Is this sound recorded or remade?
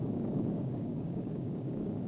remade